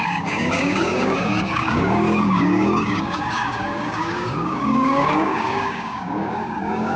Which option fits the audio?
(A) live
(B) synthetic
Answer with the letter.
B